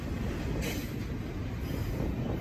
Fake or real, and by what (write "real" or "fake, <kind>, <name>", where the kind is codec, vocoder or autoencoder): real